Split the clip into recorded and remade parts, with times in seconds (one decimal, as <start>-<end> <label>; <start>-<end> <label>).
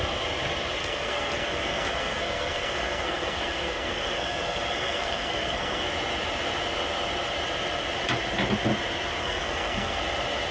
0.0-0.8 recorded; 0.8-5.9 remade; 5.9-9.2 recorded; 9.2-10.0 remade; 10.0-10.5 recorded